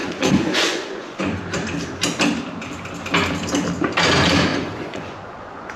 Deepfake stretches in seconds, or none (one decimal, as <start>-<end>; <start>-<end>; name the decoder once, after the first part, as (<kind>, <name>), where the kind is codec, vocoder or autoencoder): 0.0-1.2 (vocoder, Vocos); 4.5-5.8